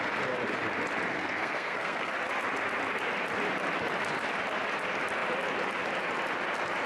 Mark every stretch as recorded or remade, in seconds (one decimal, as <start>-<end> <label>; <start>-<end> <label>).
0.0-1.1 recorded; 1.1-2.1 remade; 2.1-6.9 recorded